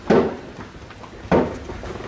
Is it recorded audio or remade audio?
recorded